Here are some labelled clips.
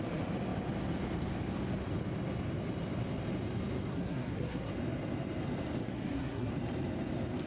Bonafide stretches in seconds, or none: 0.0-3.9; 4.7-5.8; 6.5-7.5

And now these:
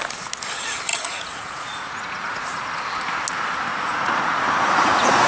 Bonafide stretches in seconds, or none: 0.0-0.9; 2.7-3.7

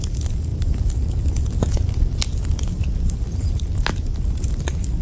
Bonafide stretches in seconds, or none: 0.0-5.0

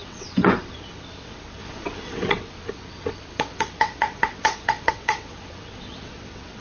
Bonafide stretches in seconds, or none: none

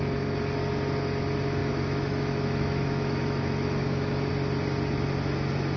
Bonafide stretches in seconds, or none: 0.0-1.6; 4.3-5.8

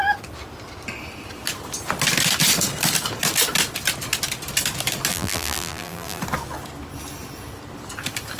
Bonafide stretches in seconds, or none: 0.0-5.1; 6.2-8.4